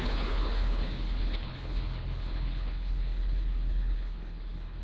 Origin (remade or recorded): remade